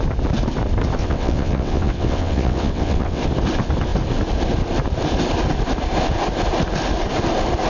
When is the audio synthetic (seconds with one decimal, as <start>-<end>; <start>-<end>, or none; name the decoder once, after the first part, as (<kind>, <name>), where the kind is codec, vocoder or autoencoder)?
1.0-3.2 (vocoder, WaveNeXt)